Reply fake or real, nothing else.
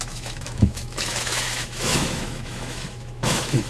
fake